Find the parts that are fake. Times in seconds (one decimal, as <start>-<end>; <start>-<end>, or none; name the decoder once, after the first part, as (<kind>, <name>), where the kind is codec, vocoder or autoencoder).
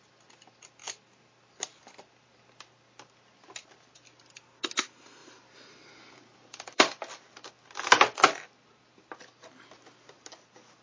5.2-7.5 (vocoder, BigVGAN v2)